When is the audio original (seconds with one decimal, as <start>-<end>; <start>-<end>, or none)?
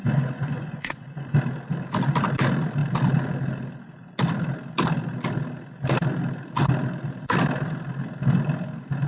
1.4-9.1